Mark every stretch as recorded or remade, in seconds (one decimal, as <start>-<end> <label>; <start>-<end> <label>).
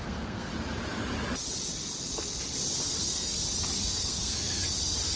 0.0-0.5 remade; 0.5-2.8 recorded; 2.8-3.3 remade; 3.3-4.0 recorded; 4.0-4.6 remade; 4.6-5.2 recorded